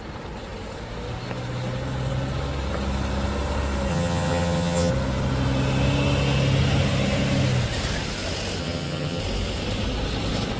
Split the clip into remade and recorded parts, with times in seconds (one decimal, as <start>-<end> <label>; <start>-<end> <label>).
0.0-3.9 recorded; 3.9-4.9 remade; 4.9-8.6 recorded; 8.6-9.2 remade; 9.2-10.6 recorded